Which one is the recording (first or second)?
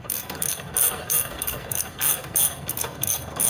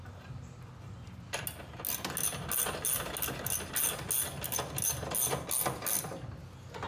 second